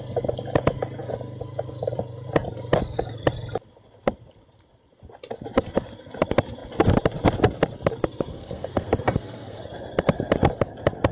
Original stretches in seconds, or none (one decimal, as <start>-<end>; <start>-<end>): 0.0-8.3; 9.6-11.1